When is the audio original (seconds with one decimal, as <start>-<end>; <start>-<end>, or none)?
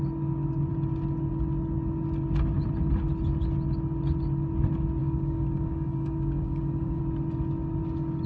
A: 0.0-5.0; 7.0-8.3